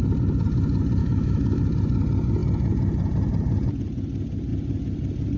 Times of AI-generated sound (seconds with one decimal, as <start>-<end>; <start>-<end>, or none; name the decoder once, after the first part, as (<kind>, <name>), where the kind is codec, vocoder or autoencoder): 1.0-1.6 (autoencoder, DAC-VAE)